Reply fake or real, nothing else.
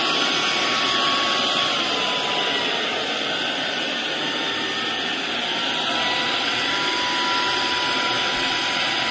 real